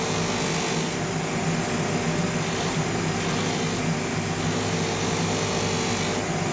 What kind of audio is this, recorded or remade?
recorded